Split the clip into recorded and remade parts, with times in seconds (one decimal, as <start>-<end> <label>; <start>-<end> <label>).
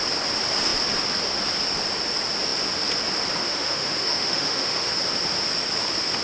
0.0-3.4 recorded; 3.4-4.9 remade; 4.9-6.2 recorded